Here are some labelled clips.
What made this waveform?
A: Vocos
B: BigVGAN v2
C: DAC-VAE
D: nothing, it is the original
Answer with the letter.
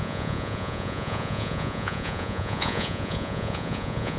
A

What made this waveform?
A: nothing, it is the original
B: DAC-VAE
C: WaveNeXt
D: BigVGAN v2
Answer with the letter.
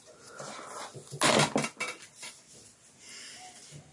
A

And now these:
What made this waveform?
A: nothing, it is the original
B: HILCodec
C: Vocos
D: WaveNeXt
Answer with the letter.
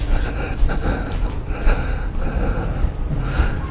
A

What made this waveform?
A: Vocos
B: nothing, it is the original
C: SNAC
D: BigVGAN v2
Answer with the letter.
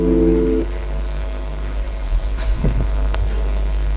C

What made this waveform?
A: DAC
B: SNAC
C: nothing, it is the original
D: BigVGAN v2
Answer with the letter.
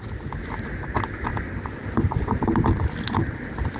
C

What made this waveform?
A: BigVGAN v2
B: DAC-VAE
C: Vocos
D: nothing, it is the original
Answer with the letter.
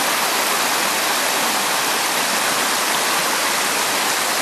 D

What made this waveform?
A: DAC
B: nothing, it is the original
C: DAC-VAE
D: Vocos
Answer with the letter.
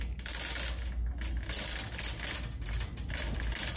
B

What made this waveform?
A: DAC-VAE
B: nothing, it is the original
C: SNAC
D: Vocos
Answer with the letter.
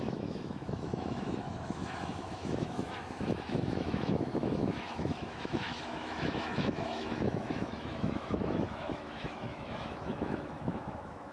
A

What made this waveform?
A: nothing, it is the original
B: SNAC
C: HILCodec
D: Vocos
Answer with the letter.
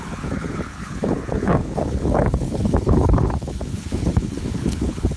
C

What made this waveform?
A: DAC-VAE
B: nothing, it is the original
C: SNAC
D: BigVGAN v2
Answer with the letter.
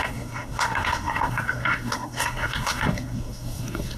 C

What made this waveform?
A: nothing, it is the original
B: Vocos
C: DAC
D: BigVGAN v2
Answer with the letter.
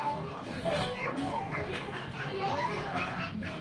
C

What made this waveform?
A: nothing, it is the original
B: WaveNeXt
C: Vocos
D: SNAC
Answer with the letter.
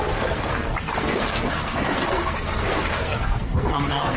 D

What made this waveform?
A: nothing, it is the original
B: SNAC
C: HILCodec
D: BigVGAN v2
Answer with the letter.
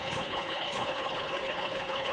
C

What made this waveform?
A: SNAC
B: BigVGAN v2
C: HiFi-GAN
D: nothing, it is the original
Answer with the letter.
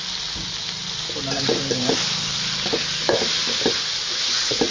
D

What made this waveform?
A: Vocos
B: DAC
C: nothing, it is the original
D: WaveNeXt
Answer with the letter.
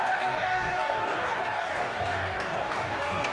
B